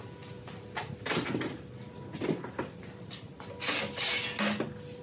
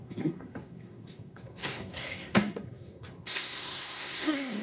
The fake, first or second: second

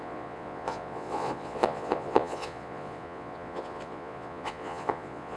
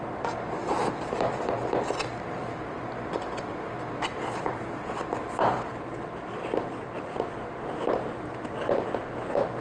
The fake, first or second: first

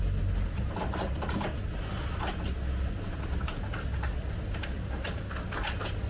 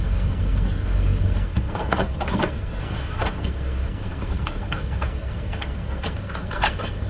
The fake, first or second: second